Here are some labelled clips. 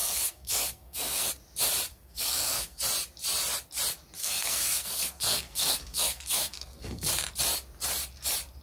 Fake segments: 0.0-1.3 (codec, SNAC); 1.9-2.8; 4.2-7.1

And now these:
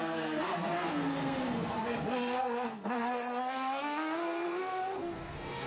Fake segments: 0.0-5.7 (codec, SNAC)

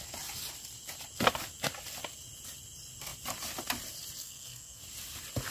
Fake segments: 4.2-4.8 (codec, SNAC)

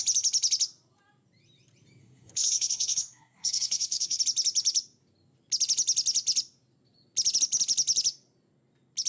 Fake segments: 2.0-4.2 (codec, SNAC)